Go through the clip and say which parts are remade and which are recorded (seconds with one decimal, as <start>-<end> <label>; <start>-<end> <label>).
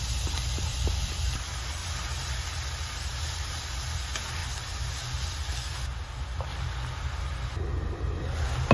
0.0-1.8 recorded; 1.8-2.3 remade; 2.3-8.7 recorded